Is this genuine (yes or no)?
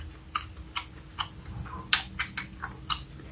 yes